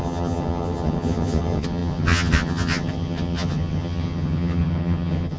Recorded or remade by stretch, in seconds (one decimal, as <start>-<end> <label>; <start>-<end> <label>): 0.0-5.4 remade